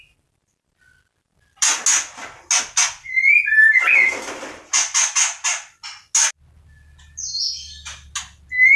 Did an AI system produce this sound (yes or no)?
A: no